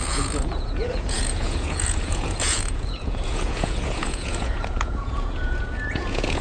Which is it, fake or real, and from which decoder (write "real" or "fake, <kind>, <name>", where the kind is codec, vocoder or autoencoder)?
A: fake, vocoder, Vocos